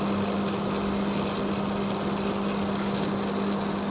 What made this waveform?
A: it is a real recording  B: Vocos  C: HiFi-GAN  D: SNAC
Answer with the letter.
A